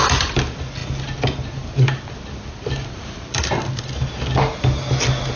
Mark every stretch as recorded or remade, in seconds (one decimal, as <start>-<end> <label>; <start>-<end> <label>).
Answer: 0.0-5.4 recorded